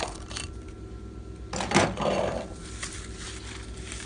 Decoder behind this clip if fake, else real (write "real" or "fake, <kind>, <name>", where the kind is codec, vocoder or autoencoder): real